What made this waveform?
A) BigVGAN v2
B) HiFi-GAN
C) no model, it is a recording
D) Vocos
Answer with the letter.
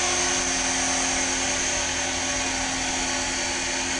C